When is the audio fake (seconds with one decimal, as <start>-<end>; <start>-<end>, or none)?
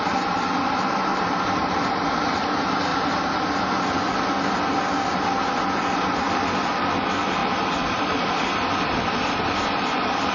1.1-2.5; 2.9-3.7; 7.4-10.3